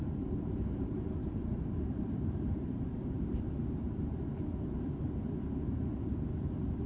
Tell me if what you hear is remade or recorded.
remade